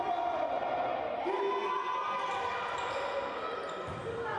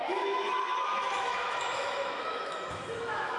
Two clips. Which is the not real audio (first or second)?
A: second